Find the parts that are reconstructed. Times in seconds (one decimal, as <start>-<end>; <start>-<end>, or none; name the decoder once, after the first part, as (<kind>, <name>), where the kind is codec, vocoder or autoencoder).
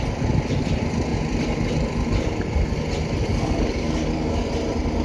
3.3-4.5 (codec, DAC)